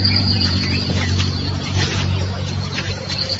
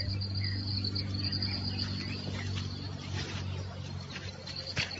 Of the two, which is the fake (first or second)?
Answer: first